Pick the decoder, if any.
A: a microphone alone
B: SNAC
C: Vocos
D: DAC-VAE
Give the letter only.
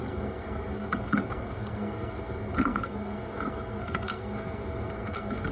B